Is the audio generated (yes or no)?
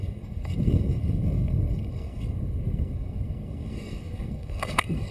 yes